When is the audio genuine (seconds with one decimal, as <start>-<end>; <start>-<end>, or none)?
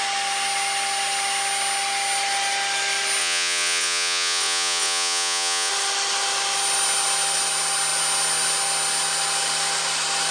0.0-3.2; 5.7-10.3